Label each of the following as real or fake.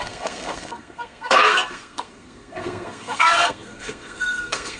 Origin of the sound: fake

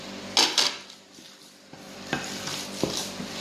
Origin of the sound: real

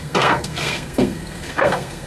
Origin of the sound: fake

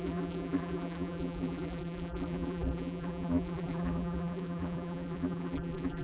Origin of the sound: fake